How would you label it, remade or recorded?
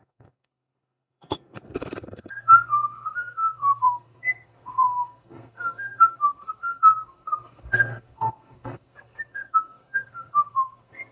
remade